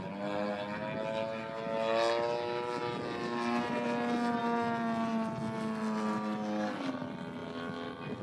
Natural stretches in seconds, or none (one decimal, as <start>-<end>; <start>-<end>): 0.0-8.2